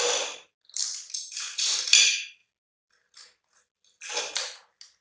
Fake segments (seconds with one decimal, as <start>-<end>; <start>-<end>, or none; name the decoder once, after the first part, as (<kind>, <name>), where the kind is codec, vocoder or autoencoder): none